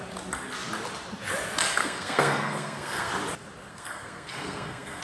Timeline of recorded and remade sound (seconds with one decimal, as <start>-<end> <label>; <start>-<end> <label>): 0.0-1.8 recorded; 1.8-3.1 remade; 3.1-3.7 recorded; 3.7-5.0 remade